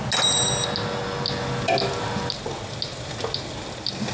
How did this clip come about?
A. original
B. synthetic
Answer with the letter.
A